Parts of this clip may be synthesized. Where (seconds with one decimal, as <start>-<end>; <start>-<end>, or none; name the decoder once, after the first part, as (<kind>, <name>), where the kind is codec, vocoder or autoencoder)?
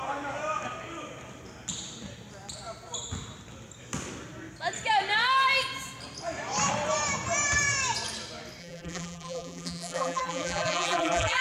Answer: 8.6-11.4 (vocoder, BigVGAN v2)